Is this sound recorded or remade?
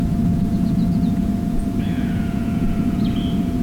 remade